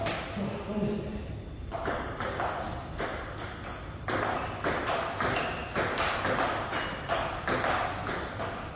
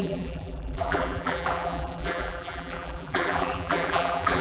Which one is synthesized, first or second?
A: second